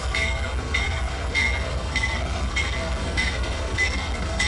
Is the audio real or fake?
fake